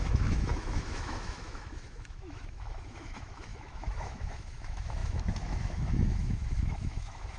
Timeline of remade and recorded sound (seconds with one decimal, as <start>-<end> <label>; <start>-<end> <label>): 0.0-7.4 remade